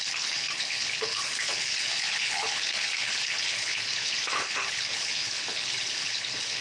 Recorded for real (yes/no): no